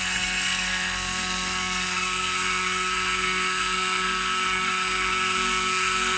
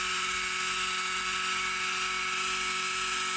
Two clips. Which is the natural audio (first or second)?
second